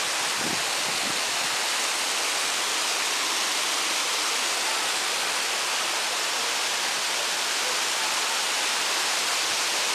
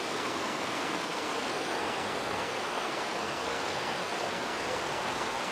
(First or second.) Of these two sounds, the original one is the first